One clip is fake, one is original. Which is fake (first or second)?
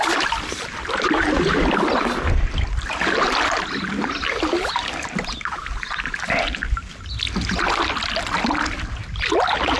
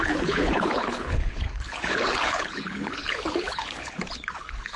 second